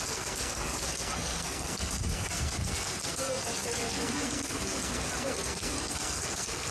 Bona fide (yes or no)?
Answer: no